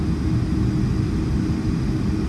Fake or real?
real